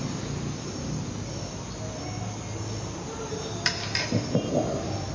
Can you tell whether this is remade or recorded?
recorded